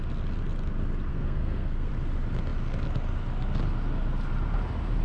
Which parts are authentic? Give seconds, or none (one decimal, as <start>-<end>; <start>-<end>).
0.0-1.1; 1.9-5.0